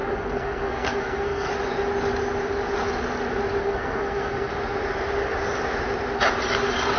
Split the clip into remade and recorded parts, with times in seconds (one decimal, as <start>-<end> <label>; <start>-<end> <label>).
0.0-1.5 remade; 1.5-3.6 recorded; 3.6-4.5 remade; 4.5-7.0 recorded